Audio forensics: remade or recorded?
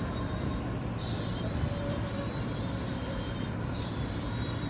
remade